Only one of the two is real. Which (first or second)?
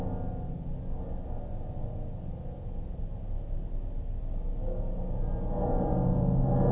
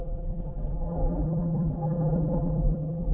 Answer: first